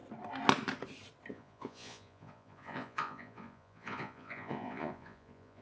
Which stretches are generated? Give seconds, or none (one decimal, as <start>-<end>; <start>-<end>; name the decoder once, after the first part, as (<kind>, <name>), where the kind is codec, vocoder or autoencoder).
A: 1.3-5.6 (vocoder, Vocos)